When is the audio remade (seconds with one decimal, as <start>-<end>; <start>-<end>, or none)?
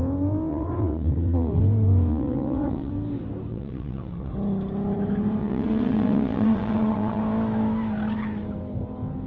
0.5-1.6; 2.1-2.9; 3.5-4.3; 5.4-7.2